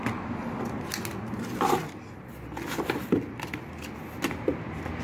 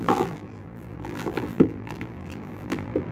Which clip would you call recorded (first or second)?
first